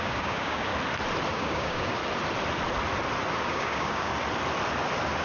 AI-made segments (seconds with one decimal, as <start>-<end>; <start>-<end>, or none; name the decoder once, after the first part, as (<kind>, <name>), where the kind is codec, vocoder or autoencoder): 0.0-0.7 (codec, DAC); 1.3-2.0; 3.4-4.1